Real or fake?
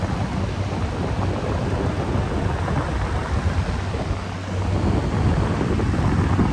real